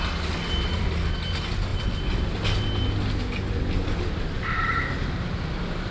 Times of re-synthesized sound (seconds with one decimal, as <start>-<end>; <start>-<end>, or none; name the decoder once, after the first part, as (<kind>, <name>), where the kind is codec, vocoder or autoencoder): none